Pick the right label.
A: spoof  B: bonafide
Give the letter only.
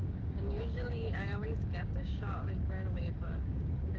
A